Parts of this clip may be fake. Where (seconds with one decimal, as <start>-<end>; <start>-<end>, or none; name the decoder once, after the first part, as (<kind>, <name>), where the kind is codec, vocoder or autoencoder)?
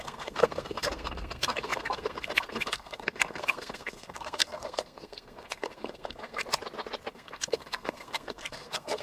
0.0-6.4 (codec, SNAC); 7.1-9.0